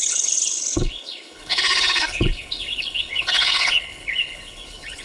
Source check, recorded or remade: remade